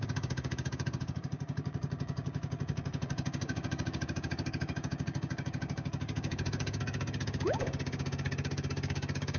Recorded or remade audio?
remade